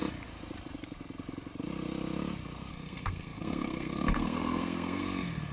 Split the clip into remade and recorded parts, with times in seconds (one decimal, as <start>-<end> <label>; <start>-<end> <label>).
0.0-2.7 recorded; 2.7-5.5 remade